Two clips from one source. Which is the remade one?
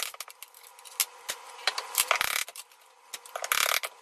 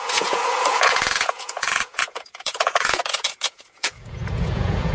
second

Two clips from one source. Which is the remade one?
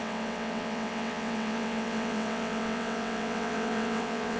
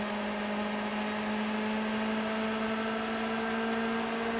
first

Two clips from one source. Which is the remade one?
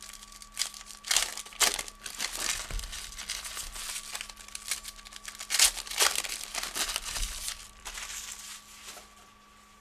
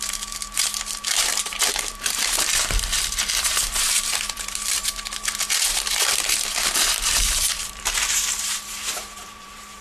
second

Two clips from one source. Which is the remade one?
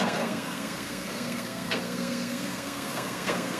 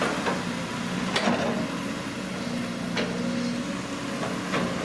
first